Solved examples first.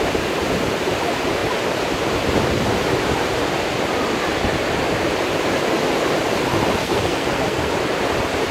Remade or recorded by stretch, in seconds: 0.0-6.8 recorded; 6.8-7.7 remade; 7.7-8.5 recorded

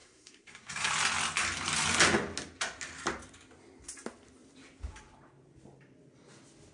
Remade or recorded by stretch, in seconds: 0.0-0.9 remade; 0.9-6.7 recorded

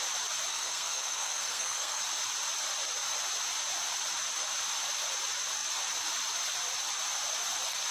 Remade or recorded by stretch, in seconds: 0.0-0.5 recorded; 0.5-2.0 remade; 2.0-7.9 recorded